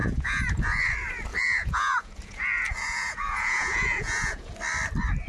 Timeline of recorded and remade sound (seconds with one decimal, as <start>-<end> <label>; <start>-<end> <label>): 0.0-0.8 remade; 0.8-1.3 recorded; 1.3-4.5 remade; 4.5-5.3 recorded